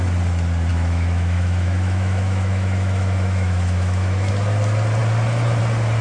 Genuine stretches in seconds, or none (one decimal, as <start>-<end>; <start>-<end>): 0.0-0.7; 4.3-6.0